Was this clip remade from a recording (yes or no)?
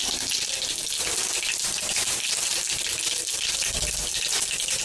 no